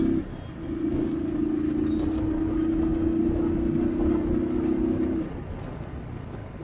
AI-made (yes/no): no